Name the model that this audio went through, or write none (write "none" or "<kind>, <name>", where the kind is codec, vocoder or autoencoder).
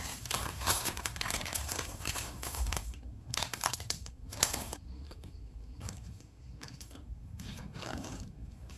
codec, SNAC